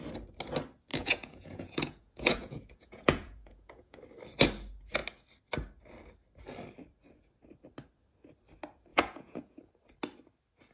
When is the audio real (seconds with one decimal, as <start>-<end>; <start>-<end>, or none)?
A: 0.0-0.9; 4.0-8.9; 9.7-10.7